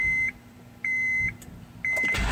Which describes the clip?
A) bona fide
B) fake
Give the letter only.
B